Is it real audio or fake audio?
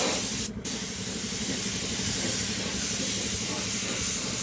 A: real